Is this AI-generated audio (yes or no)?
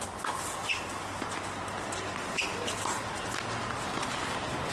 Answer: no